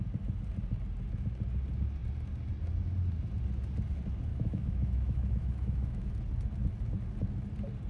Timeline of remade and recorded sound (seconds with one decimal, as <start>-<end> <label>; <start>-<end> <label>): 0.0-4.3 recorded; 4.3-6.1 remade; 6.1-7.9 recorded